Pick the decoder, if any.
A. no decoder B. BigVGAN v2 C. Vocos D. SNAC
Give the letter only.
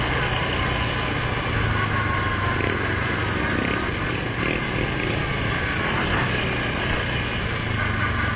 A